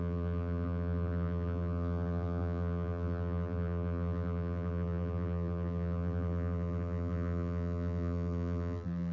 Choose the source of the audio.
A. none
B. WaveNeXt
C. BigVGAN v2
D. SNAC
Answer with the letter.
C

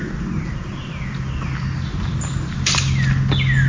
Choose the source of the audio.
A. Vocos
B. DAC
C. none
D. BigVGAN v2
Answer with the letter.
C